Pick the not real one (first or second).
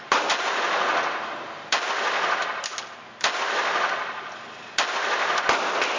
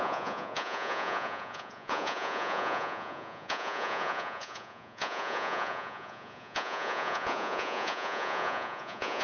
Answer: second